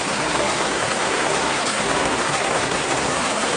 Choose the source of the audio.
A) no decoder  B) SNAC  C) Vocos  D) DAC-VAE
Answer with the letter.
B